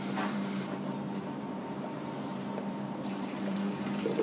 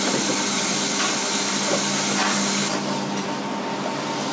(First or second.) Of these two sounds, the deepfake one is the first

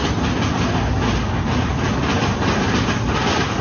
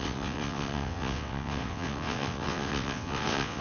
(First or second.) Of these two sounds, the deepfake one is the second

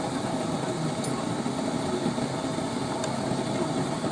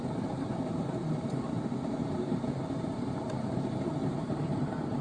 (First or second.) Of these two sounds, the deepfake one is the second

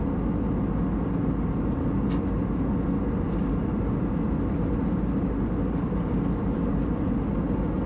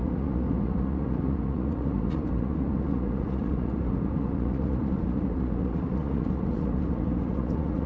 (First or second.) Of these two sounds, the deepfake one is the second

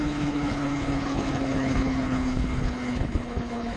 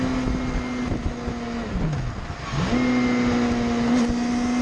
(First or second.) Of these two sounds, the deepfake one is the first